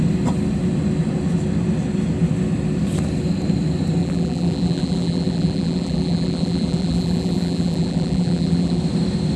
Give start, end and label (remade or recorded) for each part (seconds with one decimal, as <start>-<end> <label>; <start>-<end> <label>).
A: 0.0-4.0 recorded; 4.0-8.8 remade; 8.8-9.4 recorded